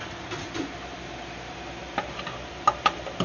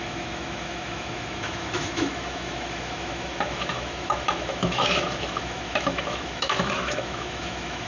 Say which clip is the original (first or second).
first